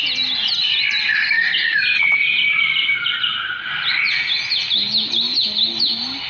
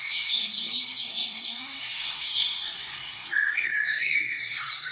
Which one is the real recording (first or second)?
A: first